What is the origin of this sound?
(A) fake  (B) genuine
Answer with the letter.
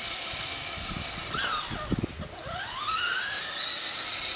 B